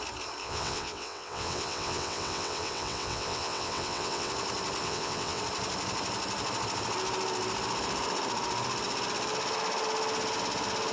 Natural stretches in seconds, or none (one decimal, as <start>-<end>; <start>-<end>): 0.0-0.4; 4.3-4.8; 5.4-10.9